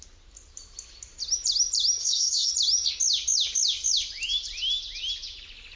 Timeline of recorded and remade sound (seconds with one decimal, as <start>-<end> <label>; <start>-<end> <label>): 0.0-2.0 recorded; 2.0-2.5 remade; 2.5-5.8 recorded